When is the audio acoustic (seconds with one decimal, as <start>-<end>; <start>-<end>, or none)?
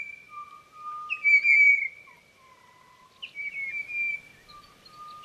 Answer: 0.0-5.2